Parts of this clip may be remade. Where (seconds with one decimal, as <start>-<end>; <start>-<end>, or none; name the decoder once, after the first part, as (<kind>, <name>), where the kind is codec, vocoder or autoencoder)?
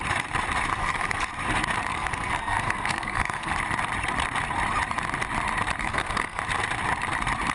0.7-1.3 (codec, SNAC); 1.9-3.5; 5.8-6.4